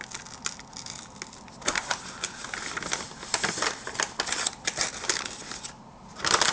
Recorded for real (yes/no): yes